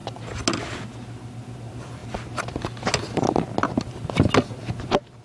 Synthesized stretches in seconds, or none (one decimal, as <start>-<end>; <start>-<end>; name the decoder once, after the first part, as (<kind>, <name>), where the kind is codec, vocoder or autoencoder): none